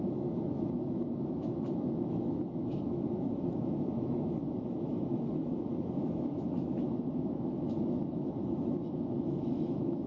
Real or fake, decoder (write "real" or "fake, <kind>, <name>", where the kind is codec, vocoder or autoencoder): fake, autoencoder, DAC-VAE